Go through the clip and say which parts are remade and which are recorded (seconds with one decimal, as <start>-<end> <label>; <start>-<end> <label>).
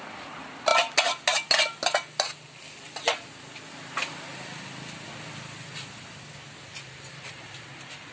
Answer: 0.0-6.7 recorded; 6.7-7.6 remade; 7.6-8.1 recorded